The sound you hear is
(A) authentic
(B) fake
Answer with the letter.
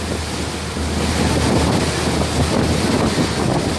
A